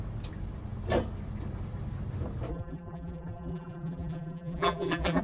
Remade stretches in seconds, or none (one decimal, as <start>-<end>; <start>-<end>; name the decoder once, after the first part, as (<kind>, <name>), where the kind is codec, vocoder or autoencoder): 2.5-5.2 (vocoder, BigVGAN v2)